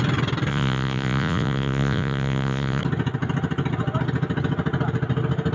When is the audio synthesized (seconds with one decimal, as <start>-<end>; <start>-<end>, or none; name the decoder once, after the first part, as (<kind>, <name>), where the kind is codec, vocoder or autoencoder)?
0.5-2.8 (vocoder, Vocos)